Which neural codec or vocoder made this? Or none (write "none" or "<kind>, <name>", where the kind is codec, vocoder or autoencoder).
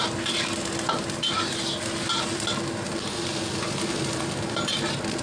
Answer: none